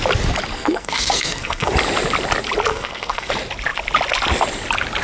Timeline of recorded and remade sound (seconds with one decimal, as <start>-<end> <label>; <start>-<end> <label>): 0.0-0.5 recorded; 0.5-1.7 remade; 1.7-2.7 recorded; 2.7-3.3 remade; 3.3-5.0 recorded